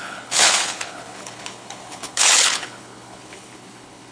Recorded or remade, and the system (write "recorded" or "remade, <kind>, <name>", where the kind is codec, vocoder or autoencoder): remade, codec, HILCodec